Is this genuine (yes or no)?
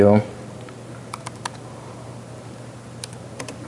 yes